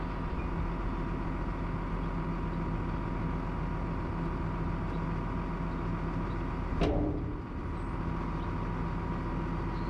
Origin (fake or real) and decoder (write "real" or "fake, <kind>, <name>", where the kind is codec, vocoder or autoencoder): real